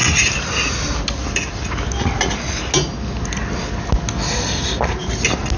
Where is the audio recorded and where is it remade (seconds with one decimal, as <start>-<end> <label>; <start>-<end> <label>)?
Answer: 0.0-5.6 recorded